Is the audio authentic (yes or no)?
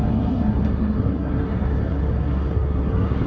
no